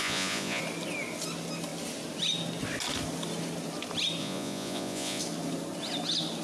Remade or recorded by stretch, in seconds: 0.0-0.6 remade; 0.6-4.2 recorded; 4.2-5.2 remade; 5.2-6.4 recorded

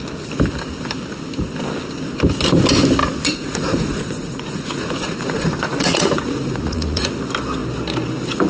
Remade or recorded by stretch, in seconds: 0.0-3.0 recorded; 3.0-7.1 remade; 7.1-8.5 recorded

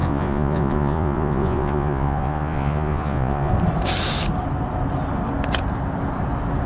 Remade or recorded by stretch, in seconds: 0.0-3.5 remade; 3.5-6.7 recorded

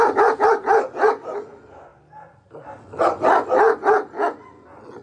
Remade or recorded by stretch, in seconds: 0.0-5.0 recorded

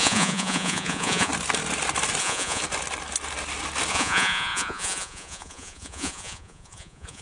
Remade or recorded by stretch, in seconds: 0.0-1.3 remade; 1.3-2.2 recorded; 2.2-2.6 remade; 2.6-3.9 recorded; 3.9-7.2 remade

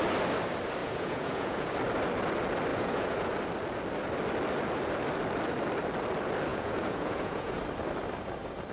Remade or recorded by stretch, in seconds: 0.0-0.8 recorded; 0.8-1.7 remade; 1.7-2.7 recorded; 2.7-3.3 remade; 3.3-6.5 recorded; 6.5-7.6 remade; 7.6-8.7 recorded

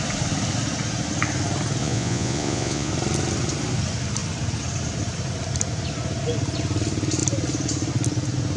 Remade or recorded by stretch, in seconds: 0.0-1.8 recorded; 1.8-2.9 remade; 2.9-8.6 recorded